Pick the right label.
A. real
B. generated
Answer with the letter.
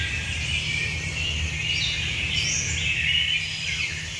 A